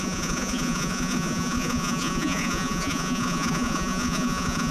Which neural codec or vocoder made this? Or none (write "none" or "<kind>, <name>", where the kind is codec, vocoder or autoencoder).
vocoder, Vocos